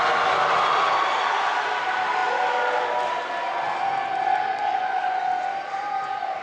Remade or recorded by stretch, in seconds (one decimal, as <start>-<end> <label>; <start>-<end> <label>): 0.0-4.5 recorded; 4.5-5.2 remade; 5.2-6.4 recorded